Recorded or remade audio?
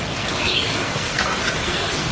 remade